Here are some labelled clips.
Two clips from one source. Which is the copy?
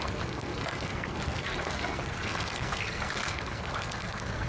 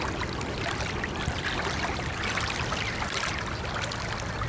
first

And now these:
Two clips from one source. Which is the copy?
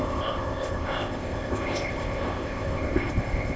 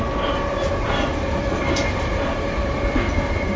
first